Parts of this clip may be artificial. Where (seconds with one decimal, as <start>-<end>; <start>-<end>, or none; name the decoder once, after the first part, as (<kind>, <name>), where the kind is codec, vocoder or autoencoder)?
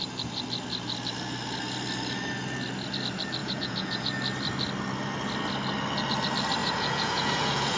3.4-4.1 (vocoder, Vocos); 6.6-7.8